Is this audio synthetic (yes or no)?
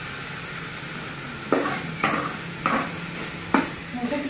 no